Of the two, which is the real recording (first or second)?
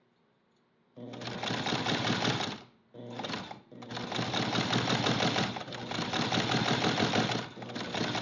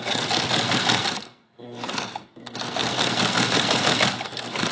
first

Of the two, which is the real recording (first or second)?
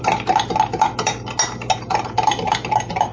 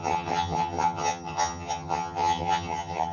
first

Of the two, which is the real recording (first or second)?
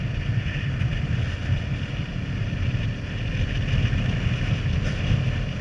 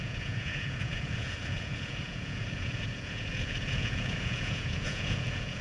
first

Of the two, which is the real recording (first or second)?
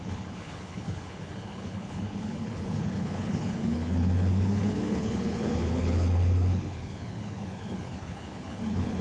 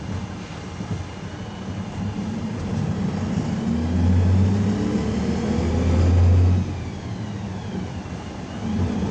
second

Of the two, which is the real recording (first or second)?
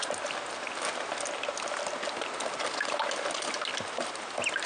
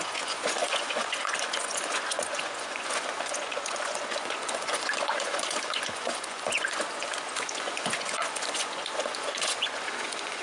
first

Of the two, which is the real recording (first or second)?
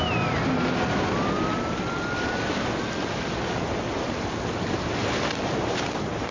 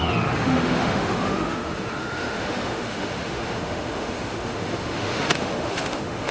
first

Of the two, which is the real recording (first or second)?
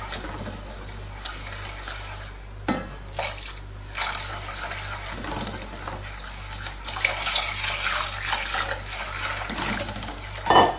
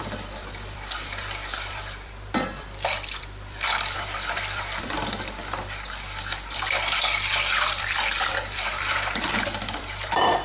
first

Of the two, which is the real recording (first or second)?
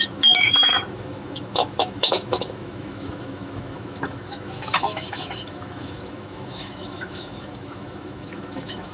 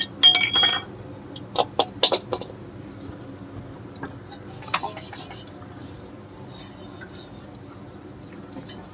second